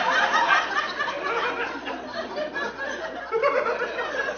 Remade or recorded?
recorded